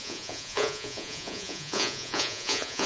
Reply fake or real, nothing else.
fake